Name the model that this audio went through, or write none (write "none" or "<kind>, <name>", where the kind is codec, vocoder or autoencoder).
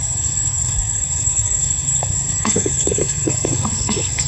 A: codec, SNAC